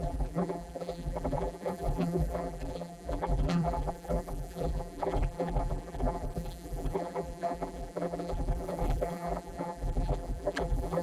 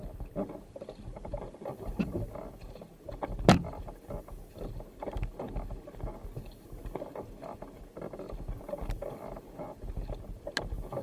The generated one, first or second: first